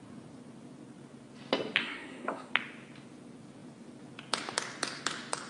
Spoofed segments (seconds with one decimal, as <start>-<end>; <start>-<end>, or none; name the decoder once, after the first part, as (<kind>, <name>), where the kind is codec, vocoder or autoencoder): 1.8-2.5 (codec, SNAC)